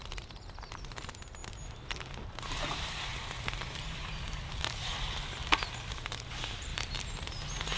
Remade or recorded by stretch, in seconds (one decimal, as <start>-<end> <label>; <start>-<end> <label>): 0.0-7.8 remade